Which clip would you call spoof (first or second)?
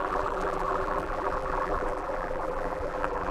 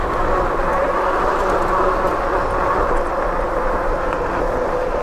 first